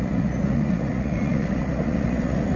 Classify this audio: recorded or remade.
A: remade